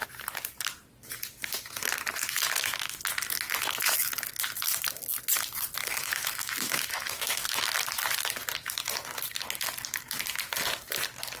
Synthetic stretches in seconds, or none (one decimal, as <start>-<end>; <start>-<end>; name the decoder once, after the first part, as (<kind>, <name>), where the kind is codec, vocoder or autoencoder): 2.2-3.0 (autoencoder, DAC-VAE); 5.8-7.7